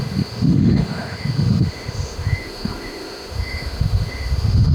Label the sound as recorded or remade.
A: remade